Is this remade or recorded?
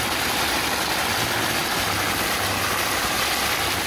recorded